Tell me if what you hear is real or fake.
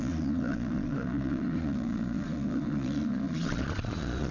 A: fake